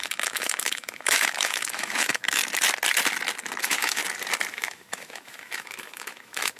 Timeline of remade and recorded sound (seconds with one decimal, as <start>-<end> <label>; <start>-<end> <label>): 0.0-2.4 remade; 2.4-3.6 recorded; 3.6-4.0 remade; 4.0-4.5 recorded; 4.5-6.6 remade